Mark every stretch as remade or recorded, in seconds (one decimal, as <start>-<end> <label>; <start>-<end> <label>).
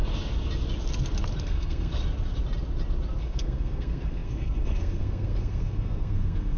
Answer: 0.0-1.4 recorded; 1.4-1.9 remade; 1.9-3.2 recorded; 3.2-6.6 remade